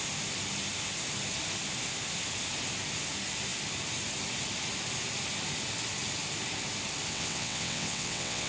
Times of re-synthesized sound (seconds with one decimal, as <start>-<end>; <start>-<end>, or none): 7.1-8.5